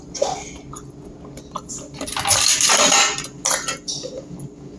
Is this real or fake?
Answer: real